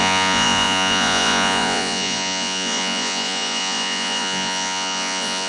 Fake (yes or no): yes